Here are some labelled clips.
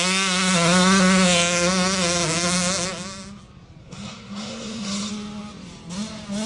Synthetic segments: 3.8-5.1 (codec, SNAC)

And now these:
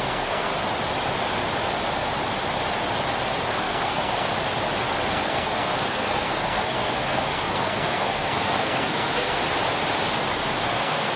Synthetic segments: 0.0-0.5 (codec, SNAC); 3.5-4.3; 5.1-9.4; 10.7-11.2

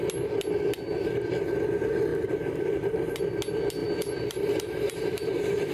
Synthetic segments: 2.1-3.2 (vocoder, BigVGAN v2); 3.8-5.7

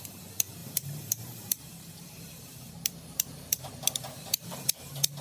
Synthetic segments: 0.6-3.7 (vocoder, BigVGAN v2)

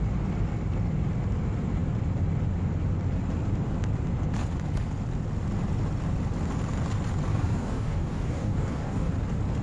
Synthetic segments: 7.3-9.1 (codec, DAC)

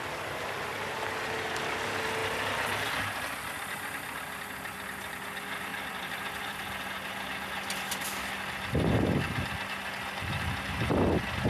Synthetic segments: 5.7-6.6 (vocoder, BigVGAN v2)